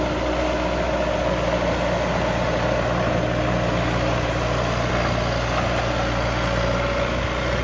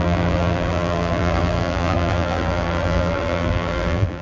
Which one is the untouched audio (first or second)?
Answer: first